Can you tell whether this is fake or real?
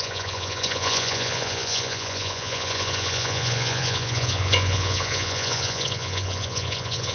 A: fake